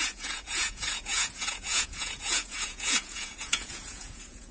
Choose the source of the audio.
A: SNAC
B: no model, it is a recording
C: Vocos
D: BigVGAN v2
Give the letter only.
C